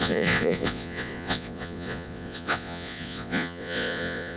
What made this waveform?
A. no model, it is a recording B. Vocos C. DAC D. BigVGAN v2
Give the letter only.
B